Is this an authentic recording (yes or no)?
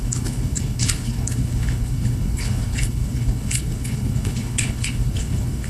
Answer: no